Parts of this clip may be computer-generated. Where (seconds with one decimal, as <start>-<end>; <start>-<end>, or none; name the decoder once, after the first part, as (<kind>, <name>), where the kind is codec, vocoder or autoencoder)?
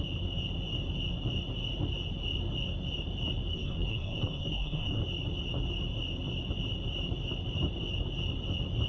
3.5-5.0 (codec, SNAC)